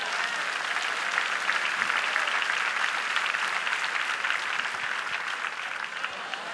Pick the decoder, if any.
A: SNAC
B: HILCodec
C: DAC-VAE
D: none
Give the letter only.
D